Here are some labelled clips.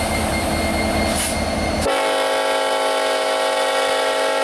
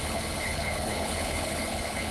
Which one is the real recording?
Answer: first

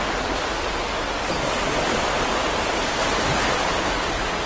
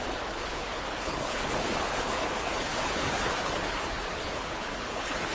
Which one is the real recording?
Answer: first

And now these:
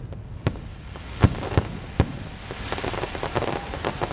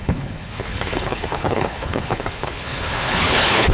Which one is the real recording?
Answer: first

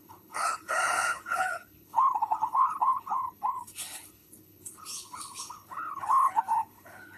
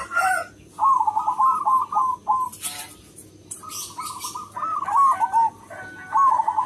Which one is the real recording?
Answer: second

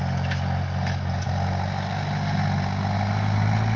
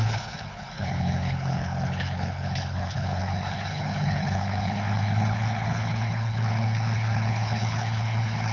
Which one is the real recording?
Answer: first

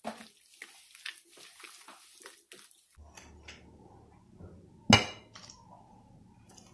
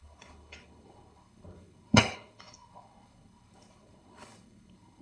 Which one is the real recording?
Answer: first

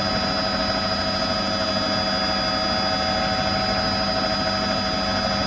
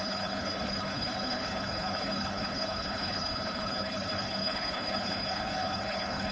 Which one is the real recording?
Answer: first